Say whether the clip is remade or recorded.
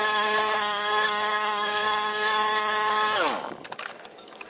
remade